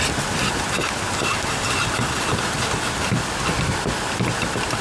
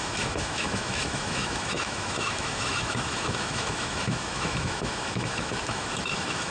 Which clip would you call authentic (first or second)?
first